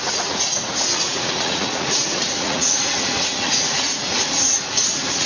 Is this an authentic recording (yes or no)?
no